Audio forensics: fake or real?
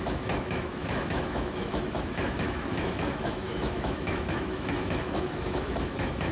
fake